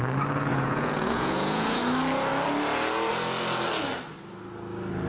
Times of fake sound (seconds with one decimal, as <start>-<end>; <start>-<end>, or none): 0.5-1.8